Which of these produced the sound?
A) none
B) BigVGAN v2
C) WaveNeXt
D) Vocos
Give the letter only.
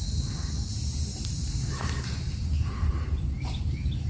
B